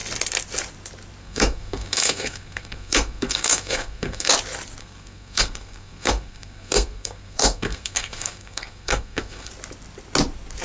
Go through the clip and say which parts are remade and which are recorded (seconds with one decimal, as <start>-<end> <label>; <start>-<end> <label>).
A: 0.0-1.2 recorded; 1.2-4.3 remade; 4.3-4.8 recorded; 4.8-9.5 remade; 9.5-10.6 recorded